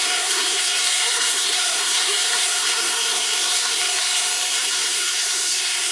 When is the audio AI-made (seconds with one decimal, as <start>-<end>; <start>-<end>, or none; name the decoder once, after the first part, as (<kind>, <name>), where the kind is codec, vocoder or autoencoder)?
0.0-5.9 (codec, SNAC)